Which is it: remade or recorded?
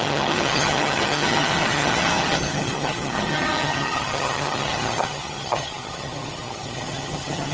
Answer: remade